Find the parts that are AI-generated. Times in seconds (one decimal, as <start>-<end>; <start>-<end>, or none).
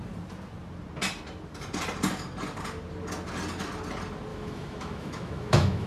4.3-5.9